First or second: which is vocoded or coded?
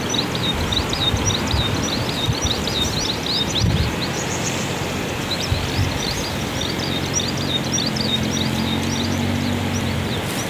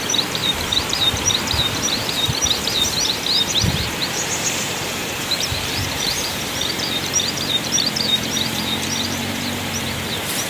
second